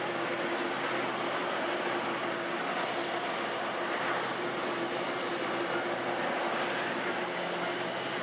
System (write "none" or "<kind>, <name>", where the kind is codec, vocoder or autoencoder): none